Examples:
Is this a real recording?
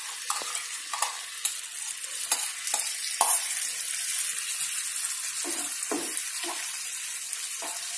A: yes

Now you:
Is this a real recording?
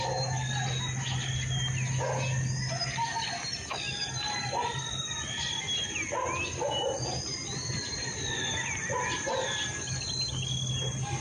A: yes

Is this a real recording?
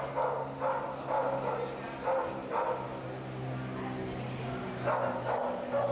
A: yes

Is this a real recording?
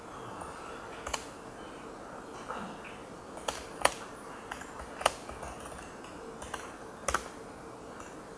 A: yes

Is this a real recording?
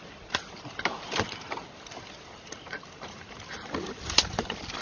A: yes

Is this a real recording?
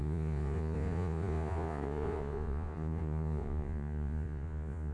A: no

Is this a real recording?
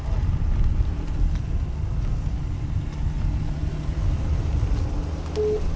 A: yes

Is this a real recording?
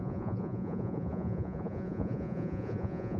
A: no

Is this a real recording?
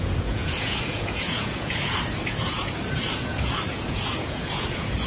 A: no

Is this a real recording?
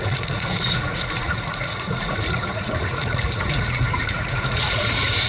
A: no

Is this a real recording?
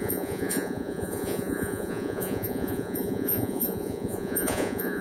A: no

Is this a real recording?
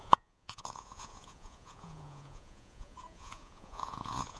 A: no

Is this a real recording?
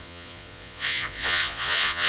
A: no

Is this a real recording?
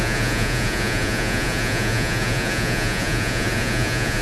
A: no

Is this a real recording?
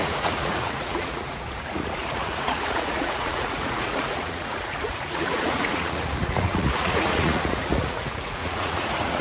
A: no